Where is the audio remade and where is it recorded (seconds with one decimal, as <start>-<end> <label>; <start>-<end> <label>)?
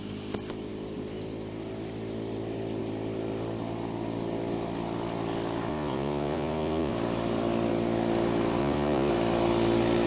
0.0-5.7 recorded; 5.7-6.9 remade; 6.9-8.6 recorded; 8.6-9.1 remade; 9.1-10.1 recorded